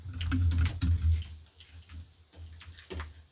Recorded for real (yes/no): yes